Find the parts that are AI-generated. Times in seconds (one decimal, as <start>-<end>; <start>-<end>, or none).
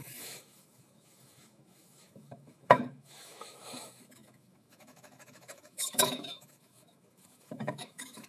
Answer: 0.0-8.3